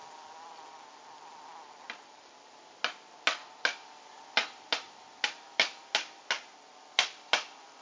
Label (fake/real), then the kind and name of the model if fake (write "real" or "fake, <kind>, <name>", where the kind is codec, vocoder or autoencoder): real